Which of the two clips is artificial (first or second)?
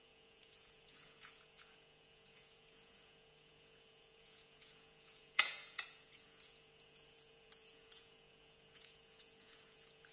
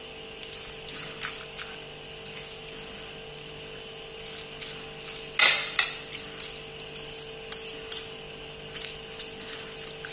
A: first